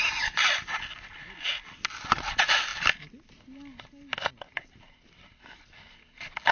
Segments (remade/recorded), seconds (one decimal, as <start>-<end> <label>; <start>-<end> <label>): 0.0-6.5 recorded